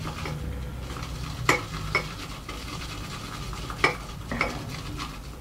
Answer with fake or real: real